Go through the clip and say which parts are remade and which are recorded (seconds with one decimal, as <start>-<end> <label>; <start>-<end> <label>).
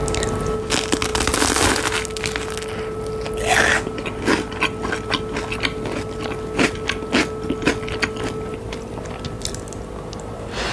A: 0.0-10.7 recorded